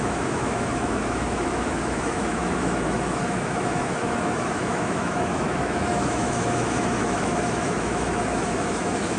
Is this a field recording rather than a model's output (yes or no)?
no